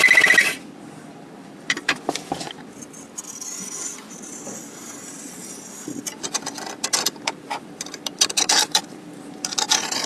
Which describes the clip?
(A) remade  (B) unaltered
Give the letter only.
A